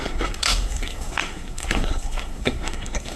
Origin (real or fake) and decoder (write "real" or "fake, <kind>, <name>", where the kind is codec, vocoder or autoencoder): fake, codec, SNAC